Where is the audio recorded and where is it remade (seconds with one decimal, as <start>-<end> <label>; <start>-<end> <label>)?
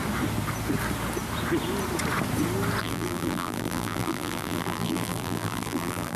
0.0-2.8 recorded; 2.8-6.2 remade